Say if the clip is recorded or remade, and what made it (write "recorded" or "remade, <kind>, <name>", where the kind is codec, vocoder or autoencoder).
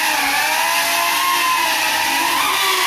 recorded